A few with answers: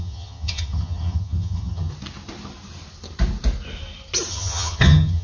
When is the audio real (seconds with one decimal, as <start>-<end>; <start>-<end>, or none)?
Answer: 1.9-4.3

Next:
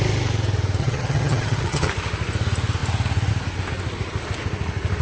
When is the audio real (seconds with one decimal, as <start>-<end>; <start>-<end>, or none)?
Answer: 0.0-0.8; 1.9-5.0

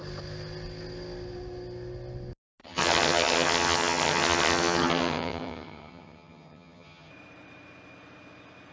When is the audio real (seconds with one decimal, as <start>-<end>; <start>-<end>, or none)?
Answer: 0.0-2.6; 7.1-8.7

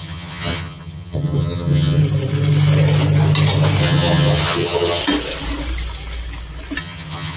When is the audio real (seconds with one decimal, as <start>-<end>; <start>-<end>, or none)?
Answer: 2.0-3.8; 5.0-6.8

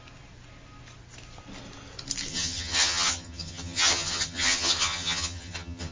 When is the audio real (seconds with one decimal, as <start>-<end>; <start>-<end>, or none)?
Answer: 0.0-2.3

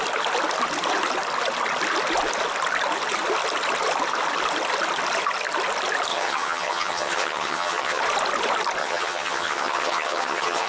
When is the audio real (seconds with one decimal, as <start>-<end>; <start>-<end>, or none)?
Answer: 0.0-6.1; 8.0-8.8